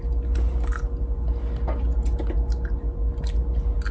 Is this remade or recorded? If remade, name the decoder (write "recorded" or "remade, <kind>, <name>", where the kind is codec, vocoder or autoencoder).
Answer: recorded